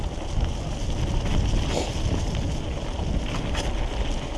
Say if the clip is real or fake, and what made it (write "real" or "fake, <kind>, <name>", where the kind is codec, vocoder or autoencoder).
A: real